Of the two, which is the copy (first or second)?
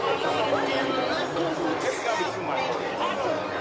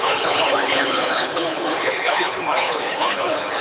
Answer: second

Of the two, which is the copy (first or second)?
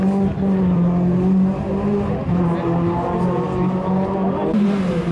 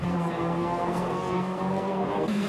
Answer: second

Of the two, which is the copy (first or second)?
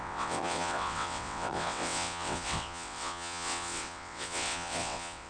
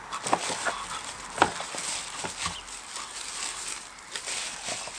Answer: first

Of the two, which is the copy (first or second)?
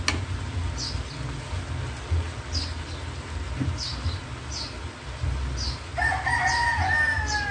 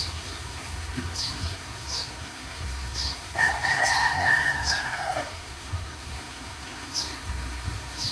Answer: second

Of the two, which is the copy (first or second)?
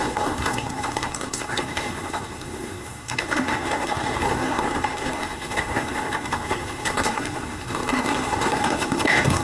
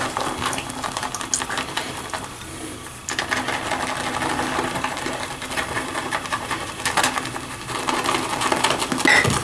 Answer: first